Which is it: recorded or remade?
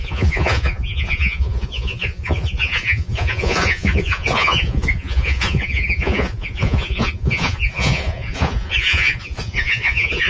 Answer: remade